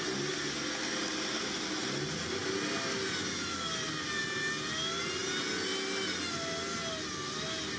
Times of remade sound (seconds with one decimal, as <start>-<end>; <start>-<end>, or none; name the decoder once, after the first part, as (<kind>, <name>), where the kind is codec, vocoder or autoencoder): none